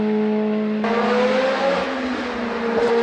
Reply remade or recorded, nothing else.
recorded